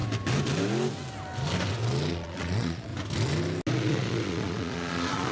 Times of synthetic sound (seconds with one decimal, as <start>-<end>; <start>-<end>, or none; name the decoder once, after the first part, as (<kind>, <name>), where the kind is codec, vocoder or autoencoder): 2.1-2.9 (vocoder, Vocos); 3.7-5.3